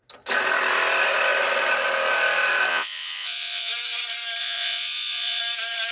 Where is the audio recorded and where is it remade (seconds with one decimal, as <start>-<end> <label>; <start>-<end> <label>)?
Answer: 0.0-2.7 recorded; 2.7-3.7 remade; 3.7-4.4 recorded; 4.4-5.4 remade; 5.4-5.9 recorded